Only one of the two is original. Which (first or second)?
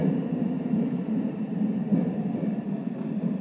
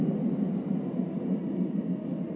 second